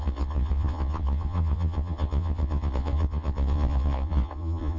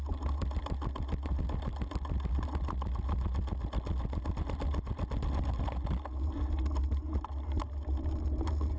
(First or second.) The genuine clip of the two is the second